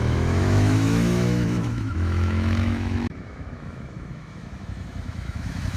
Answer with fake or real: fake